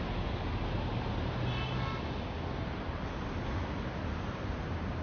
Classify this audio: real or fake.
real